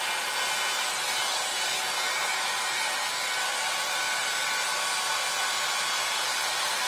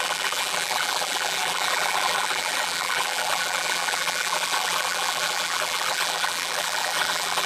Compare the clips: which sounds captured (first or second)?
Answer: first